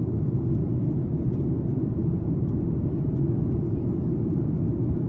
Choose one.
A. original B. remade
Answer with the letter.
A